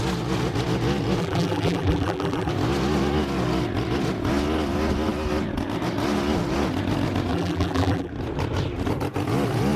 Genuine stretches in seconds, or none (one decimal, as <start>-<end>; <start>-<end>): 0.0-1.2; 2.5-7.3; 8.1-9.8